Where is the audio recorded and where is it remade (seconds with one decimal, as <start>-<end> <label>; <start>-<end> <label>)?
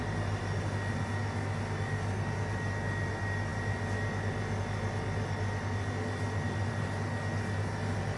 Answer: 0.0-8.2 recorded